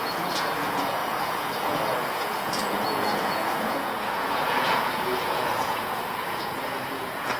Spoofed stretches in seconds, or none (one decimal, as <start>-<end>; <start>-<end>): 0.0-7.4